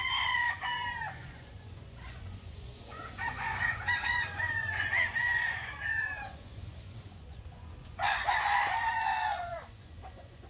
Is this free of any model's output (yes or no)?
no